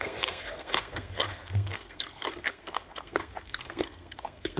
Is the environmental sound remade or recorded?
remade